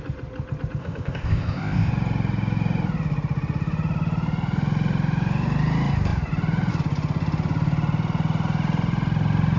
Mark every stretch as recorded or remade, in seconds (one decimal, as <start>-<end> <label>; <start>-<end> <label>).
0.0-0.8 recorded; 0.8-1.9 remade; 1.9-9.6 recorded